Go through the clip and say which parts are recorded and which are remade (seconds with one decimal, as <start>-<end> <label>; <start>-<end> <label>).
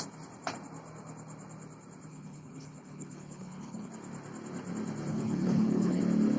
0.0-2.1 recorded; 2.1-3.9 remade; 3.9-5.1 recorded; 5.1-6.0 remade; 6.0-6.4 recorded